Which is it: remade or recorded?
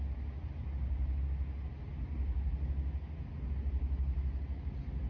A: recorded